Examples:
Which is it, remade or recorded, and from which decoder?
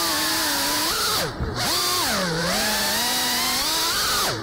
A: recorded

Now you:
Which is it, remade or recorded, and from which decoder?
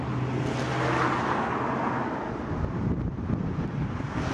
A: recorded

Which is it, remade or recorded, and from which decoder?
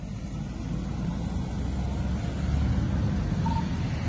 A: recorded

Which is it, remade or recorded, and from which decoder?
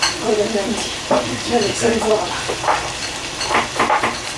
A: recorded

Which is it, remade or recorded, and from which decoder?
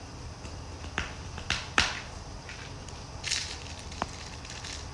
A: remade, vocoder, BigVGAN v2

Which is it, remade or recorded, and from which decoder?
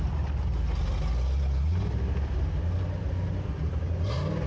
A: recorded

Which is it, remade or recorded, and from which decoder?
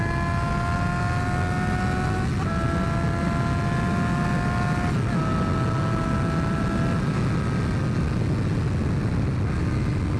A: recorded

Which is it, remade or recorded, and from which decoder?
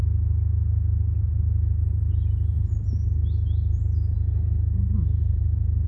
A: recorded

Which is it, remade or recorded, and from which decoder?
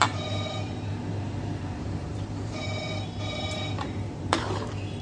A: remade, vocoder, BigVGAN v2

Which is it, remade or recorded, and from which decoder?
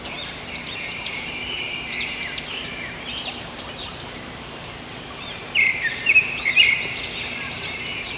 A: remade, vocoder, BigVGAN v2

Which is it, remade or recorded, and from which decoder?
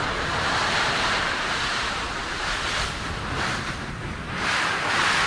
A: remade, vocoder, BigVGAN v2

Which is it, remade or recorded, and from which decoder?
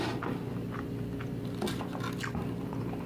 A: recorded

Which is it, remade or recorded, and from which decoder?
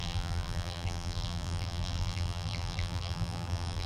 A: remade, vocoder, BigVGAN v2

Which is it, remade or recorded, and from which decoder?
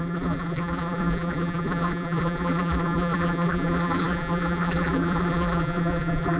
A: remade, vocoder, BigVGAN v2